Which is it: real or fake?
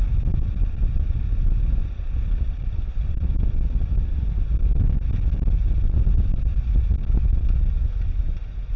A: real